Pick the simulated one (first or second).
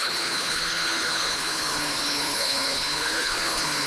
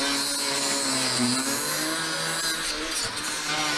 first